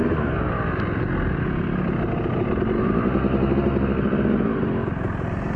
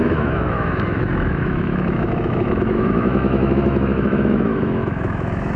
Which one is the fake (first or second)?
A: second